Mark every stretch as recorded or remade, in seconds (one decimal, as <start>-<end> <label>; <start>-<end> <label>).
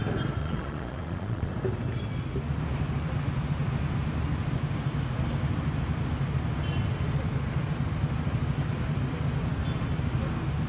0.0-0.4 recorded; 0.4-1.5 remade; 1.5-10.7 recorded